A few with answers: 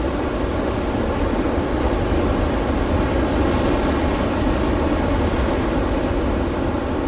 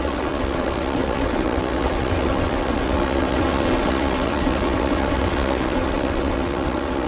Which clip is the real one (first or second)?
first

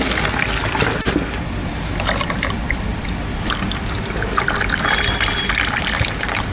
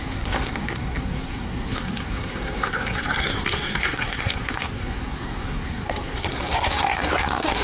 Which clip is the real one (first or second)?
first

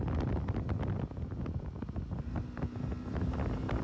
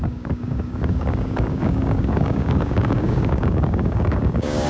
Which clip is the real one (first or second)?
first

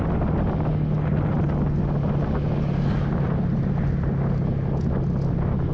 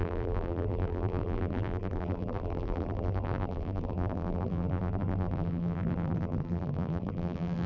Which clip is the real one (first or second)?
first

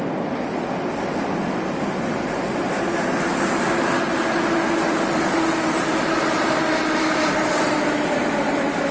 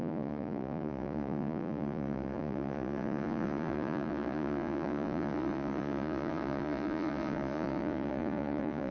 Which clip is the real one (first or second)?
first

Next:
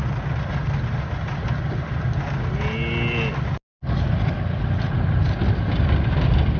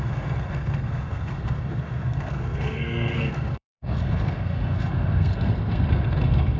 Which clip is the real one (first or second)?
first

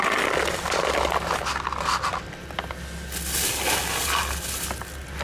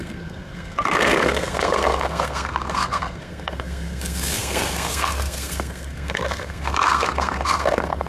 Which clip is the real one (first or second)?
first